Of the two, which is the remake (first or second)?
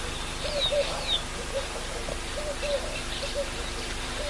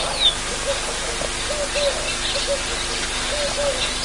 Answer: first